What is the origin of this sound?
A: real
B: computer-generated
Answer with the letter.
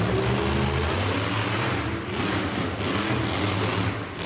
A